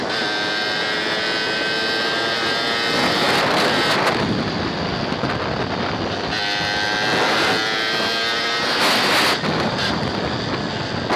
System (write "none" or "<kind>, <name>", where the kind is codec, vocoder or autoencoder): none